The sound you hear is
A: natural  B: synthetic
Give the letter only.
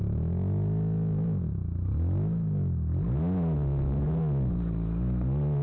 A